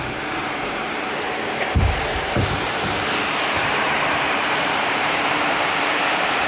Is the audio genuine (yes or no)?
no